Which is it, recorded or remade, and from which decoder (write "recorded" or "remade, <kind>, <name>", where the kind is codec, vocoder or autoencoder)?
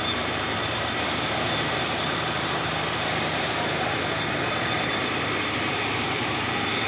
remade, vocoder, BigVGAN v2